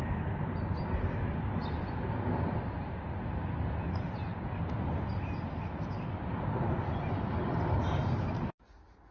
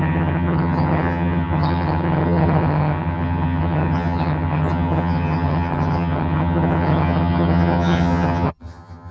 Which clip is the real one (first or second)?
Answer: first